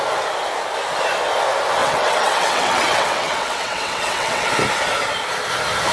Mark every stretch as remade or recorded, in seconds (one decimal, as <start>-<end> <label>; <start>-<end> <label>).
0.0-1.8 recorded; 1.8-4.5 remade; 4.5-5.9 recorded